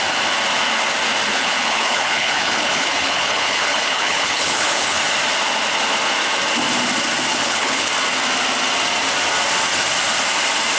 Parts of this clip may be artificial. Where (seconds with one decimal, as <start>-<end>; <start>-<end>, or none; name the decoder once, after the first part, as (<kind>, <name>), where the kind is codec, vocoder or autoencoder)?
1.3-5.0 (codec, HILCodec); 7.3-7.9